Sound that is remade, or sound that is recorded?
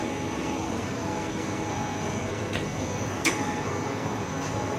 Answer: remade